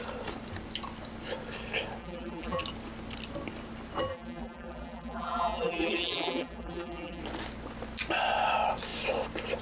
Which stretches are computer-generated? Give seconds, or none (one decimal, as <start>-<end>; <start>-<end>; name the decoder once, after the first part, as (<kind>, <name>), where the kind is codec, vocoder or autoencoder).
2.0-2.6 (vocoder, BigVGAN v2); 4.1-7.2